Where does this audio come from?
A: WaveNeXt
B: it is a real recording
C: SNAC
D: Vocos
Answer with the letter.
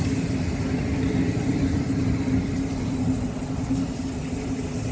B